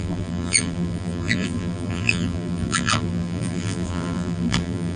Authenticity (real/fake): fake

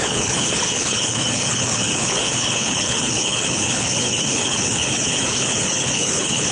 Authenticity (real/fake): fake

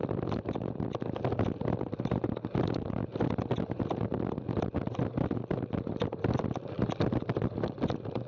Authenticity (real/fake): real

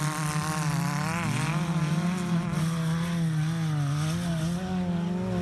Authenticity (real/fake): real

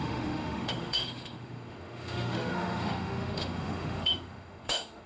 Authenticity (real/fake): fake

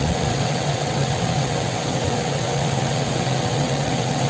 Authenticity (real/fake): fake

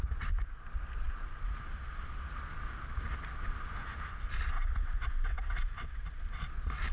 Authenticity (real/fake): real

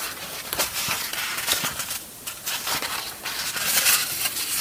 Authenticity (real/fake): real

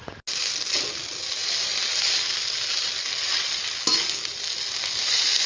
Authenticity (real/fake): real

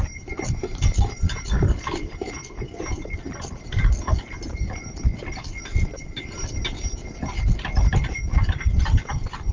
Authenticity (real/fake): real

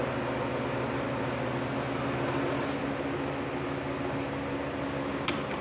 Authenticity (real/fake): real